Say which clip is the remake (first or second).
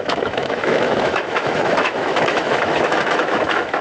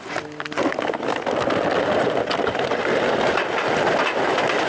first